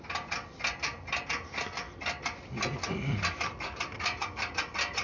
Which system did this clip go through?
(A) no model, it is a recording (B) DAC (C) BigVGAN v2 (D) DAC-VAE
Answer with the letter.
A